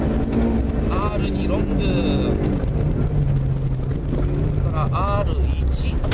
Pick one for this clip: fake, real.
real